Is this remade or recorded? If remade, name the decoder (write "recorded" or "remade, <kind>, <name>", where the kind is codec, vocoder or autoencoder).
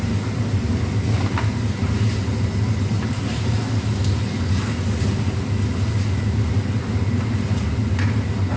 recorded